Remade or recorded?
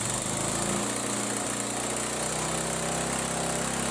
recorded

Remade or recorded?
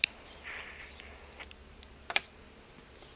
recorded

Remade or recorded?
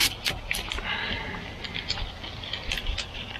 recorded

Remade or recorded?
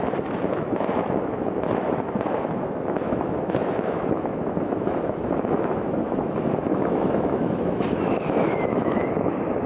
remade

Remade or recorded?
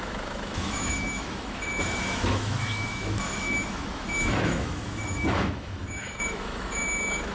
remade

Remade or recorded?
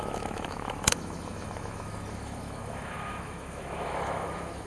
remade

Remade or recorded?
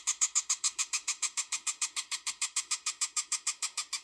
remade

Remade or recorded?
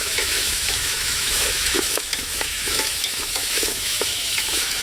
remade